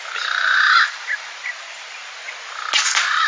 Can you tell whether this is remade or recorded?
recorded